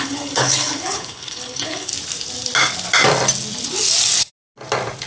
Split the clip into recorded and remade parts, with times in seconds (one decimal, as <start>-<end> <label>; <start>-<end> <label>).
0.0-1.9 remade; 1.9-5.1 recorded